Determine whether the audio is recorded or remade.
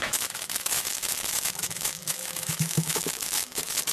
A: remade